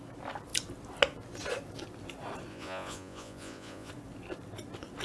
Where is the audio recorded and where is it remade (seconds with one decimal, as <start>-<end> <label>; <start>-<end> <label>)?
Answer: 0.0-2.5 recorded; 2.5-3.9 remade; 3.9-5.0 recorded